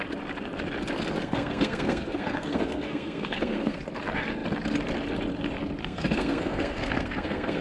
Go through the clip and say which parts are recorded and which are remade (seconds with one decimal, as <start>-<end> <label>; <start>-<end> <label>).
0.0-1.2 recorded; 1.2-3.8 remade; 3.8-5.8 recorded; 5.8-7.6 remade